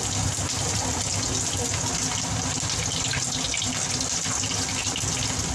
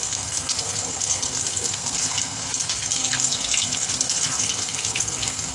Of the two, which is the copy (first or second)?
second